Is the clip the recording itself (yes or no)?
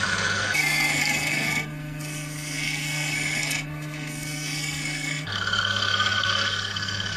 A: no